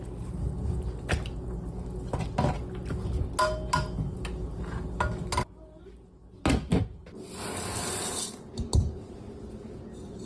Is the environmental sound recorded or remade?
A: recorded